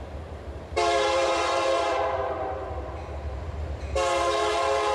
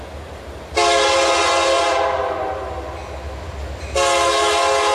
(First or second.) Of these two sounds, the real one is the second